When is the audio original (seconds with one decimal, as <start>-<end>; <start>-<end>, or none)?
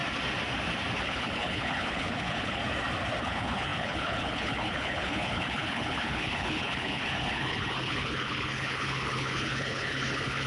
0.0-1.0; 2.6-3.2